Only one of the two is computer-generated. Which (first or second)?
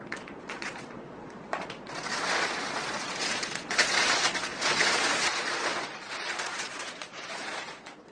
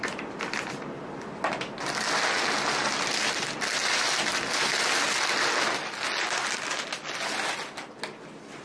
first